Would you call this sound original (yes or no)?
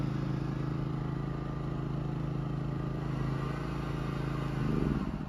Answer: yes